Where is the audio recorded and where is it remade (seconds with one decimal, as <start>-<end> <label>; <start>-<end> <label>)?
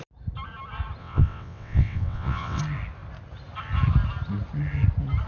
0.0-1.0 recorded; 1.0-2.6 remade; 2.6-5.3 recorded